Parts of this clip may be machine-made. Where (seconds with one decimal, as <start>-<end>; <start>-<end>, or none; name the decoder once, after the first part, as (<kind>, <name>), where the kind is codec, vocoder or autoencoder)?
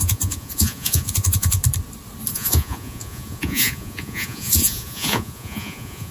0.0-1.6 (vocoder, Vocos); 2.3-6.1